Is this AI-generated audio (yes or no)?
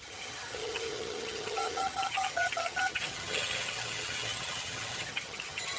yes